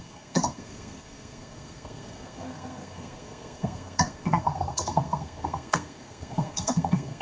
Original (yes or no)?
no